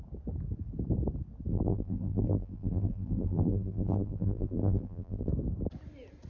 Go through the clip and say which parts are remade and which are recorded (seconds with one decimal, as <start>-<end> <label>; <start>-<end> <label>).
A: 0.0-1.5 recorded; 1.5-5.3 remade; 5.3-6.3 recorded